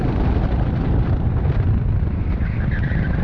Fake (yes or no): yes